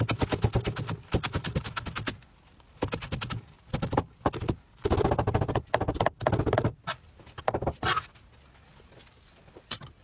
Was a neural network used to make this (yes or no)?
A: no